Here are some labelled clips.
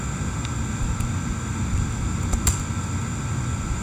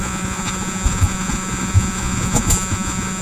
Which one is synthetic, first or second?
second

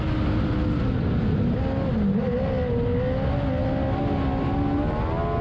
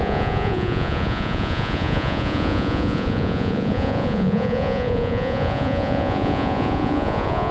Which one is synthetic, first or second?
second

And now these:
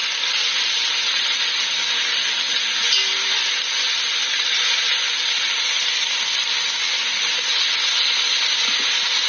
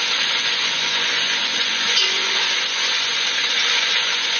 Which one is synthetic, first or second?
second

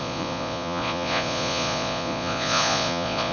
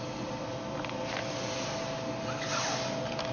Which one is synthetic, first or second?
first